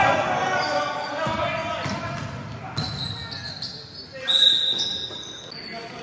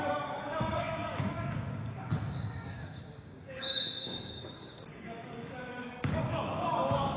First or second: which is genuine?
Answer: first